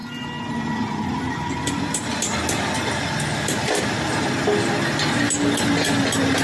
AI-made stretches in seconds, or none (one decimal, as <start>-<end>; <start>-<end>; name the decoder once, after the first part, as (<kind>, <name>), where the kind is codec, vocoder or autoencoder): none